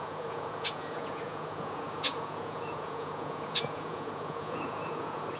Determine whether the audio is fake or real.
fake